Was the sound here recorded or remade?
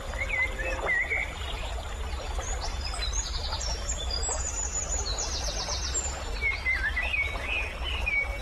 recorded